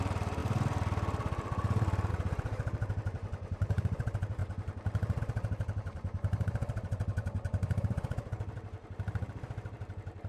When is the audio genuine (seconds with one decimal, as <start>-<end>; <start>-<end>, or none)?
0.4-2.1